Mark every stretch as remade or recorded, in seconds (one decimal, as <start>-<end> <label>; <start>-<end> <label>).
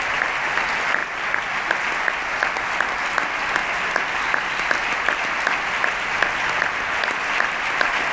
0.0-8.1 recorded